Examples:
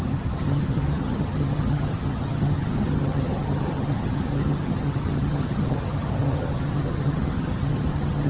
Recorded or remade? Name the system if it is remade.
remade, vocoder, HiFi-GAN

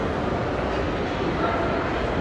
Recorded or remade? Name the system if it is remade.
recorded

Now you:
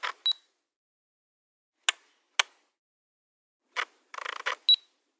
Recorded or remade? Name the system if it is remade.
recorded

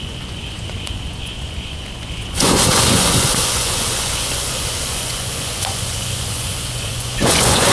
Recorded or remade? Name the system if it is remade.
remade, vocoder, Vocos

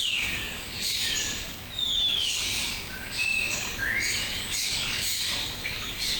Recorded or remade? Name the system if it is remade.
remade, codec, DAC